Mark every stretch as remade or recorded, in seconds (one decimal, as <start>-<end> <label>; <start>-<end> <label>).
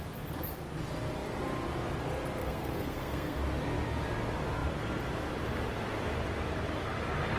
0.0-2.4 recorded; 2.4-3.4 remade; 3.4-7.4 recorded